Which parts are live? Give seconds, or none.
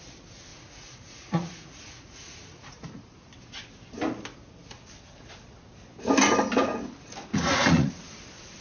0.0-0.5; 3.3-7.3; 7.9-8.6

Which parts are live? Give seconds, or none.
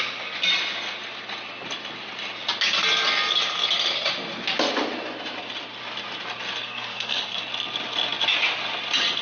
0.0-6.6; 7.4-9.2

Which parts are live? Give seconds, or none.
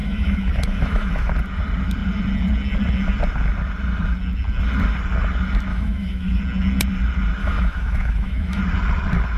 1.3-5.7; 6.4-7.4; 8.6-9.4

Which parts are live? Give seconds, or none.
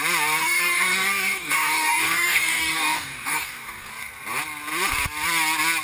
0.0-0.4; 3.9-5.8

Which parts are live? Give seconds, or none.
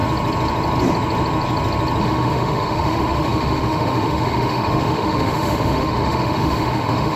0.0-2.0